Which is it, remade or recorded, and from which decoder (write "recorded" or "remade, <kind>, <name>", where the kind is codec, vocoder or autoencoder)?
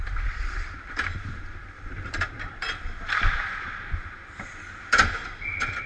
remade, vocoder, BigVGAN v2